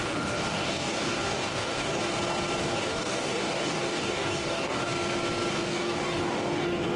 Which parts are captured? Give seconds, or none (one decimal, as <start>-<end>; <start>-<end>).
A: 2.0-2.6; 4.9-5.5